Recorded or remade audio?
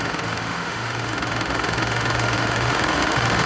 remade